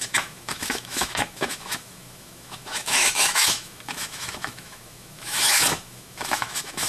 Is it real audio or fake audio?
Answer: fake